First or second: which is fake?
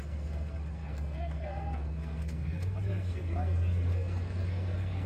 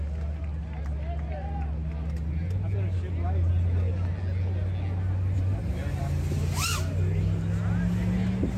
first